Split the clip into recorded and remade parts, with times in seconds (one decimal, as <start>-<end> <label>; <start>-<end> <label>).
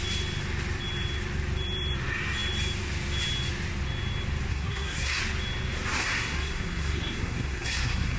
0.0-4.5 recorded; 4.5-5.2 remade; 5.2-6.0 recorded; 6.0-8.2 remade